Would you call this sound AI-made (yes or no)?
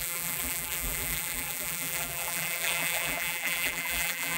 yes